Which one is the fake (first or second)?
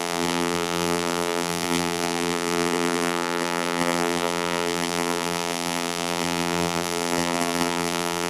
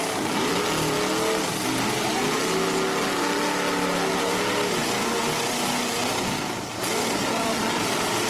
first